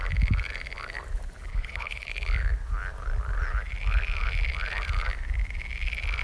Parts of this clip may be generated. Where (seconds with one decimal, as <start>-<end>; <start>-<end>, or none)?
1.5-2.1